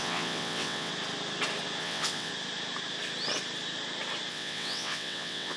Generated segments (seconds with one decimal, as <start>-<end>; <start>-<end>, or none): 0.0-0.9; 1.8-2.3; 4.3-5.6